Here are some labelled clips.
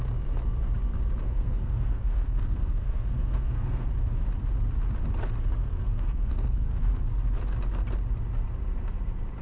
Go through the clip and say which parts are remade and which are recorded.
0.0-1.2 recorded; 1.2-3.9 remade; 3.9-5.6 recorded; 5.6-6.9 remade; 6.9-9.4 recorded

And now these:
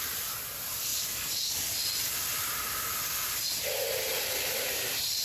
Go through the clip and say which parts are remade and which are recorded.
0.0-5.2 recorded